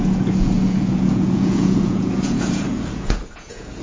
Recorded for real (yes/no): no